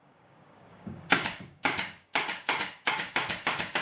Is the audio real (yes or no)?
no